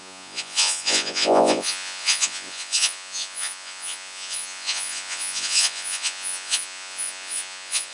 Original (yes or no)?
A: no